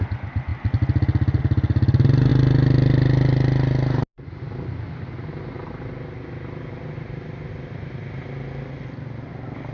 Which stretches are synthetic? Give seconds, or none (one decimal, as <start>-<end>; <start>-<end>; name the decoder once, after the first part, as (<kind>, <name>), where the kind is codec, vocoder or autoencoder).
none